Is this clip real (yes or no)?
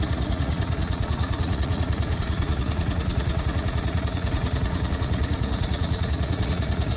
no